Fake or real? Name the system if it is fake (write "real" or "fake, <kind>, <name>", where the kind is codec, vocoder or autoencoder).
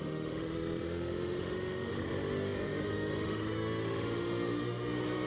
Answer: fake, autoencoder, DAC-VAE